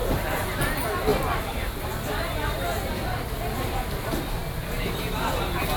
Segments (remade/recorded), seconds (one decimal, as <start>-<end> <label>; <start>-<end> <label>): 0.0-1.1 recorded; 1.1-1.9 remade; 1.9-5.8 recorded